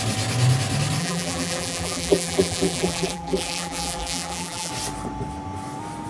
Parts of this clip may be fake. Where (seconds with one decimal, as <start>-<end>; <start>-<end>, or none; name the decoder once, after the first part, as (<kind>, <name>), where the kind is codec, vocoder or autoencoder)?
1.0-4.7 (vocoder, BigVGAN v2)